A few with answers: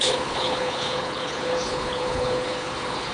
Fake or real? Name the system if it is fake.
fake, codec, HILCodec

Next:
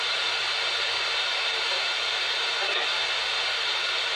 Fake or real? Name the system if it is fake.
fake, vocoder, BigVGAN v2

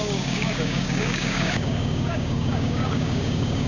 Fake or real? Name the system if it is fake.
fake, codec, DAC